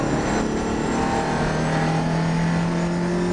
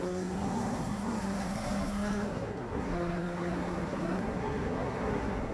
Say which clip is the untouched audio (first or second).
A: first